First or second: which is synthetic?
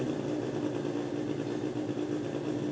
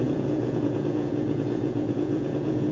second